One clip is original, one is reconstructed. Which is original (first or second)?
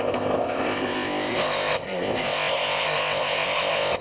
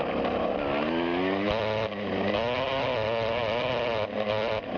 second